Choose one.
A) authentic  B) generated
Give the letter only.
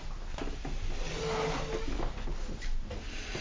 A